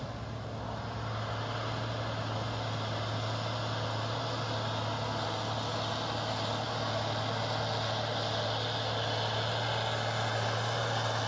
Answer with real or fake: real